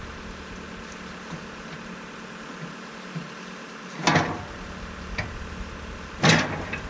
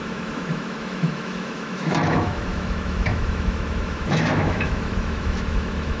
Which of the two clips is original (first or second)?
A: first